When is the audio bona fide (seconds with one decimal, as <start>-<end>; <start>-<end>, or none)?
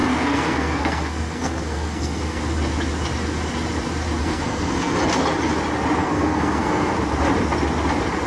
2.4-4.2; 5.0-6.0; 6.9-8.3